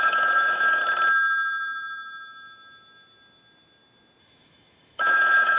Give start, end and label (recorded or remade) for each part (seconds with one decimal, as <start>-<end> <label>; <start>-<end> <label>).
0.0-0.8 remade; 0.8-4.2 recorded; 4.2-5.6 remade